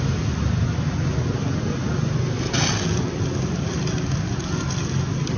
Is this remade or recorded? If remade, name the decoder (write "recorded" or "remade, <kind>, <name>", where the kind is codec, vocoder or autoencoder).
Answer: recorded